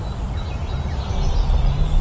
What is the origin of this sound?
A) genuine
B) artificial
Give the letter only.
A